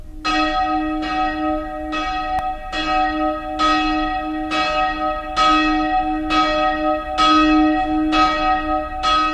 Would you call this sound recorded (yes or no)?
yes